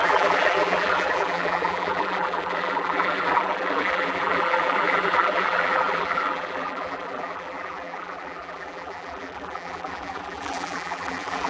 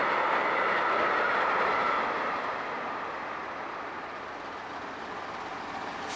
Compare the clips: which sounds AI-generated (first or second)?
first